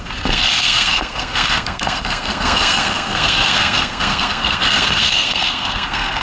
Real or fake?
fake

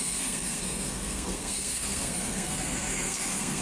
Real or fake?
fake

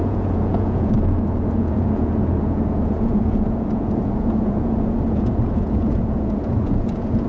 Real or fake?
fake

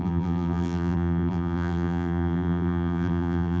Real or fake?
fake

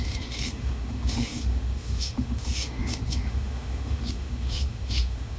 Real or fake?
fake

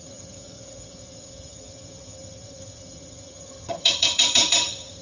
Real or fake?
fake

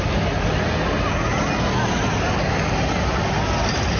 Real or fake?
real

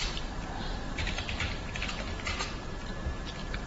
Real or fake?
fake